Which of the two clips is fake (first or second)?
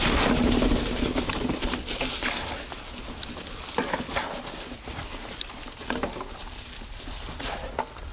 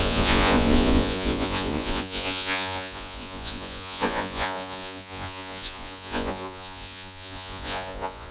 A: second